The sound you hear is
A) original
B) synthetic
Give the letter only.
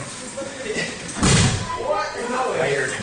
A